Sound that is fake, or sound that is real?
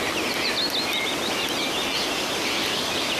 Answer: real